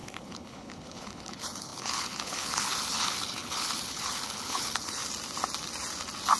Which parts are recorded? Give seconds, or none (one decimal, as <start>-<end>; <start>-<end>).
5.0-6.4